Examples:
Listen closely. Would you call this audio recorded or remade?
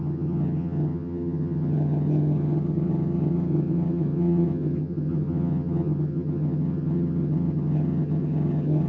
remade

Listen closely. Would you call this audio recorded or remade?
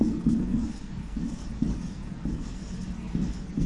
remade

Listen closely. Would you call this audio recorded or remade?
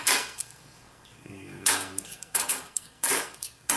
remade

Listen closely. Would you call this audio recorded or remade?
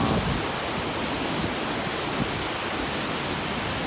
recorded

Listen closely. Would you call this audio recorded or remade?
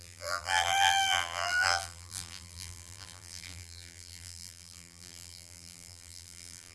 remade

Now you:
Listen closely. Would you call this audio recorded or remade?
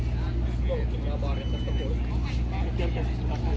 recorded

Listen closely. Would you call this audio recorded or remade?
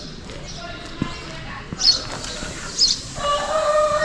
recorded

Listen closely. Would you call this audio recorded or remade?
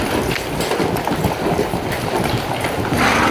recorded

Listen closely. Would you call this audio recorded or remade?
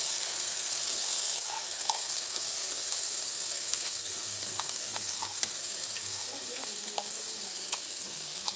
remade